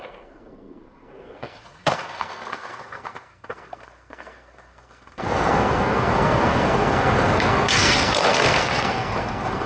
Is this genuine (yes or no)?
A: no